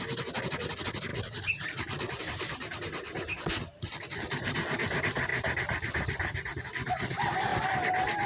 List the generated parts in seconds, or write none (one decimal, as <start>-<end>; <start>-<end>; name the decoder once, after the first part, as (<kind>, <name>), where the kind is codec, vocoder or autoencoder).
0.0-8.3 (vocoder, BigVGAN v2)